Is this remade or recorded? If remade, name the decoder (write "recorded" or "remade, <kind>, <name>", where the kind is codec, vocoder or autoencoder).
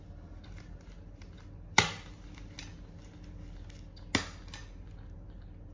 recorded